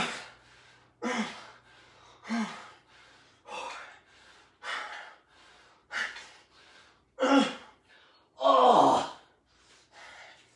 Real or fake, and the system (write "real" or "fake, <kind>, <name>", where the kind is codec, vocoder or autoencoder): real